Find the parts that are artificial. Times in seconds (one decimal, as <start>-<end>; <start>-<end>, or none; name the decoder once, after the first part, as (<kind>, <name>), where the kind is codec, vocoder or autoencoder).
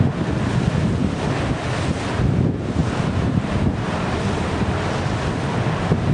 2.8-4.7 (vocoder, BigVGAN v2)